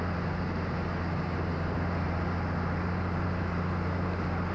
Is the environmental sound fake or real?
real